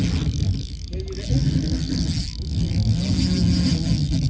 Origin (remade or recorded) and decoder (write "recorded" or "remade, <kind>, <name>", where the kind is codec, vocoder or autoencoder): recorded